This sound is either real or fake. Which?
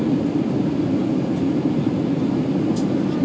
real